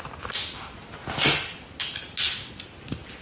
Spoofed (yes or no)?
no